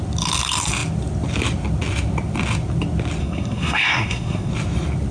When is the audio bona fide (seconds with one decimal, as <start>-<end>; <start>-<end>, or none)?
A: 0.0-3.2; 4.5-5.1